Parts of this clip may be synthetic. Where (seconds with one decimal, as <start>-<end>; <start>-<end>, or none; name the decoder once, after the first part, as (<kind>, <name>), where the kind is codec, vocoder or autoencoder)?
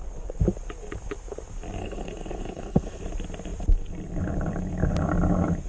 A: 1.8-3.0 (codec, SNAC)